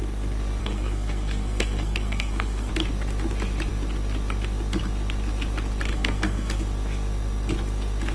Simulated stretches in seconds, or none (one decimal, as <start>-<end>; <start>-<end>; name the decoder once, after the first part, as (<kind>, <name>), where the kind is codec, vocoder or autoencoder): 0.6-2.7 (codec, SNAC); 5.9-6.6